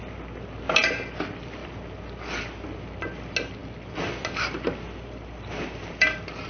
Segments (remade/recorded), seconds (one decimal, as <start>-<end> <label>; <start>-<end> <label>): 0.0-3.6 recorded; 3.6-5.6 remade; 5.6-6.5 recorded